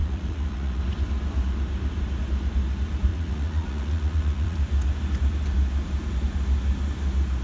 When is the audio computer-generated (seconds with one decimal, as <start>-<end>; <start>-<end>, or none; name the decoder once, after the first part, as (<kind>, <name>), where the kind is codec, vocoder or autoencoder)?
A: 0.0-0.8 (vocoder, Vocos); 3.1-4.6